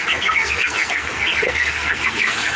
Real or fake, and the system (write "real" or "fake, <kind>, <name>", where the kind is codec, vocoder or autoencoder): fake, codec, SNAC